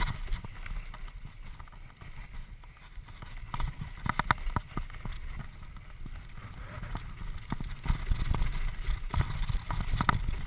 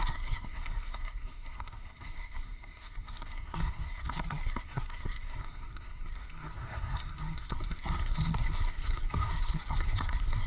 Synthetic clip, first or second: second